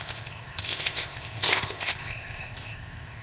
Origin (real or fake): fake